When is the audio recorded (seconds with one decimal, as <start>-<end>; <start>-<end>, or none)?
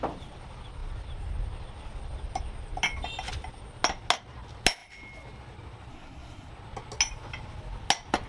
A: 0.0-5.9; 6.5-8.3